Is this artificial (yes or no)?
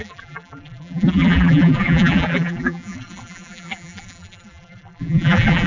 yes